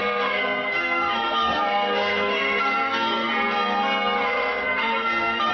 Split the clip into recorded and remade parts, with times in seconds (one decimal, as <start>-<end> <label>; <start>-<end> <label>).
0.0-3.3 remade; 3.3-4.2 recorded; 4.2-5.5 remade